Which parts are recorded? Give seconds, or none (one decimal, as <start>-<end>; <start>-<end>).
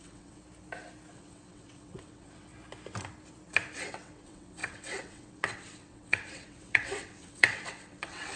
0.4-1.1; 2.5-3.8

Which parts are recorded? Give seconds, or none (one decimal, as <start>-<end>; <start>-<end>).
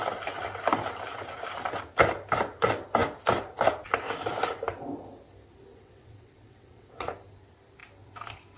0.0-5.7; 7.1-8.6